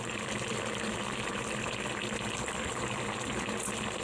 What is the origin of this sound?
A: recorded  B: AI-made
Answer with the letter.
A